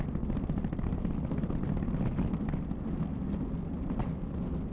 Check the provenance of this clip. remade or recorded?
remade